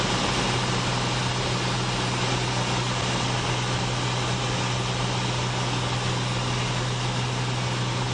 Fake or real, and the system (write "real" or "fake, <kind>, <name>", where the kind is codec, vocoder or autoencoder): real